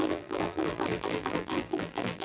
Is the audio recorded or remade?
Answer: remade